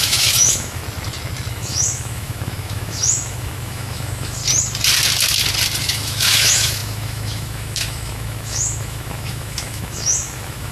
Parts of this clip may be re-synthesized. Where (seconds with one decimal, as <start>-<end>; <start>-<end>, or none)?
0.0-0.8; 1.5-4.4; 5.8-10.7